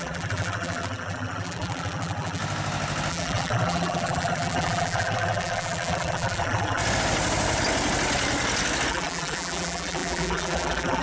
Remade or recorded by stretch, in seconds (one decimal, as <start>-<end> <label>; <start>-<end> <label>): 0.0-2.4 remade; 2.4-3.1 recorded; 3.1-6.8 remade; 6.8-8.9 recorded; 8.9-11.0 remade